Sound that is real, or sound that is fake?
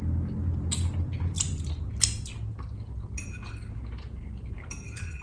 real